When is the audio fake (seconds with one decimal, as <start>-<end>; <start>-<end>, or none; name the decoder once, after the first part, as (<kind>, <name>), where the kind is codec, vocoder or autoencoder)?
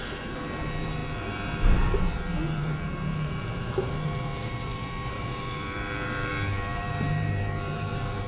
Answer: 0.0-8.3 (vocoder, BigVGAN v2)